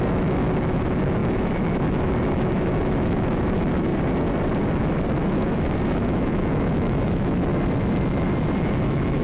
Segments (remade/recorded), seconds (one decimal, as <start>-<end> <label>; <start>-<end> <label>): 0.0-3.9 remade; 3.9-4.8 recorded; 4.8-7.5 remade; 7.5-8.6 recorded; 8.6-9.2 remade